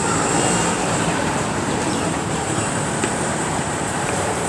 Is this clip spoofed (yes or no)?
yes